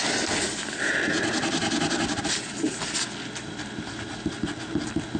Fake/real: real